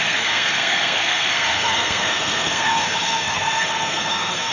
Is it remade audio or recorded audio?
remade